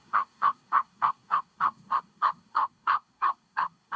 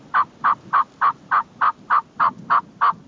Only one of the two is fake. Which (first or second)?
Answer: first